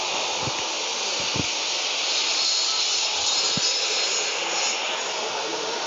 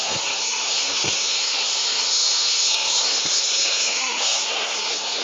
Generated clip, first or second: second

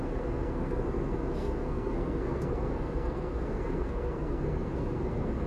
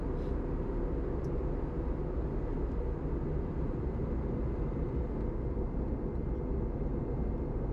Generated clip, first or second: first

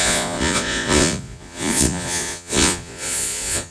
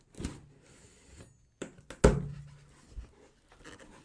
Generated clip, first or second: first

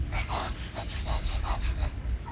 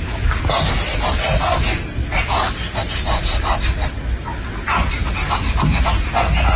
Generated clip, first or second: first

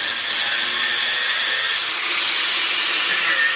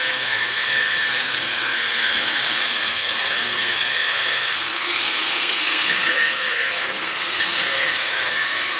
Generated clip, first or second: second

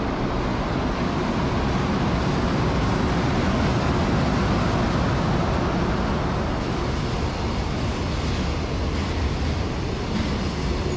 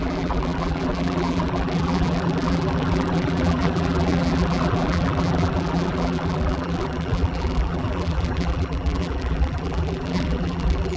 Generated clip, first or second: second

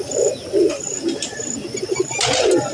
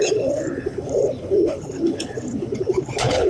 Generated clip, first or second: second